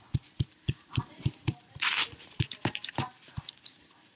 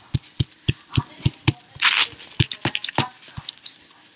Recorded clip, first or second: second